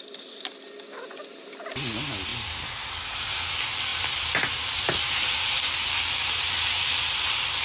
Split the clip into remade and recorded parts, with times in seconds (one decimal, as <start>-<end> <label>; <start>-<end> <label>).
0.0-7.6 recorded